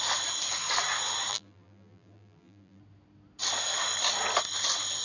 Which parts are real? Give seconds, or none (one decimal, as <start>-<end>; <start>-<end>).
0.0-1.3; 2.8-5.0